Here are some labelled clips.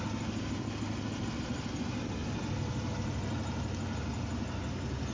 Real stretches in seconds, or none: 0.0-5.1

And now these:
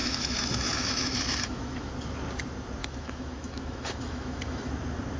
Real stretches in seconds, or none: 1.9-2.8; 4.7-5.2

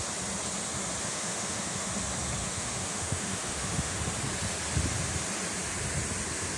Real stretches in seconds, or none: 0.0-1.0; 1.9-2.4; 4.0-6.6

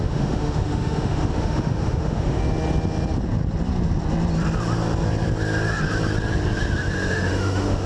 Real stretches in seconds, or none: 2.4-7.1

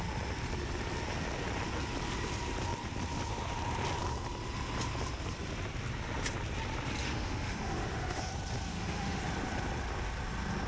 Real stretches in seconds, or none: 0.0-7.0; 8.2-8.7; 9.2-10.7

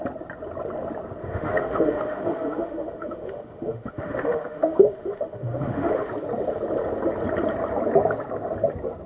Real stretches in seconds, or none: 0.0-1.2; 6.1-9.1

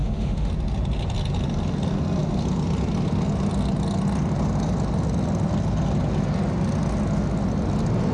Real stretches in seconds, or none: 0.5-8.1